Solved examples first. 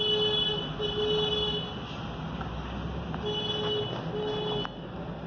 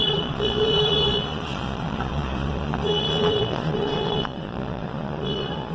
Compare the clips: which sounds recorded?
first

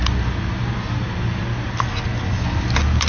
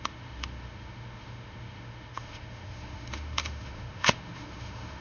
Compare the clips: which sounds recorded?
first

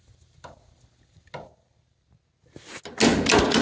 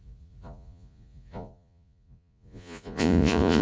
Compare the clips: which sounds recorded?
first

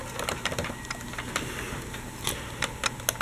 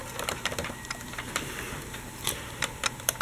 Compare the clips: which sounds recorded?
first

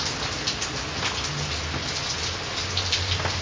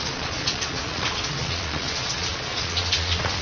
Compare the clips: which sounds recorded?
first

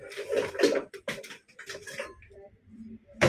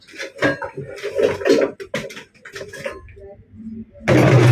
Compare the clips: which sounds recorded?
second